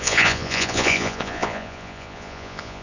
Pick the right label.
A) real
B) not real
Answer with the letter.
B